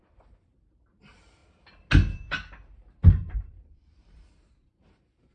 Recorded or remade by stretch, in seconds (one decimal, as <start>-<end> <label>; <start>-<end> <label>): 0.0-1.4 remade; 1.4-3.1 recorded; 3.1-5.3 remade